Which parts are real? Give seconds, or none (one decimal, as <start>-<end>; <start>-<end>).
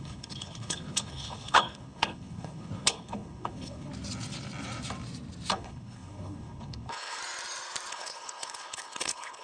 3.9-5.5; 7.2-7.9